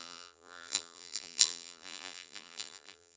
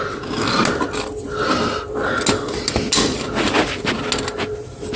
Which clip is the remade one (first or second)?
first